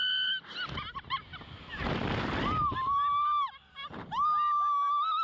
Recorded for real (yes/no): yes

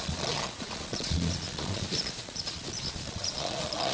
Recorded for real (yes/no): no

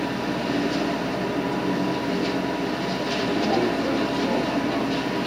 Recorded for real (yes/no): yes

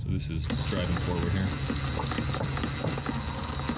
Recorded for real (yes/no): yes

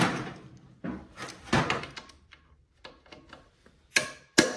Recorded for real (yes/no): yes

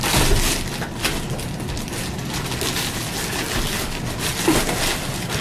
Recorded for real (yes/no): yes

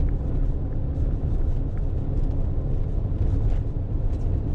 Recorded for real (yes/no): yes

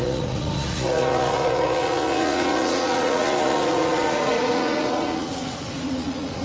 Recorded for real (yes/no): no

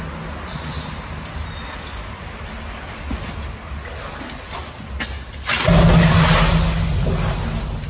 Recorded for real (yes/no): yes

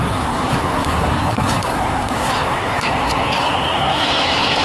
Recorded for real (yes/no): no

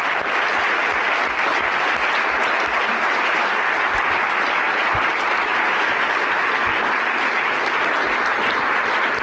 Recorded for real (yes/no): yes